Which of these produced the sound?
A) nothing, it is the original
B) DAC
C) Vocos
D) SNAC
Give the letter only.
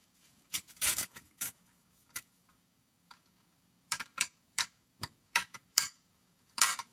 B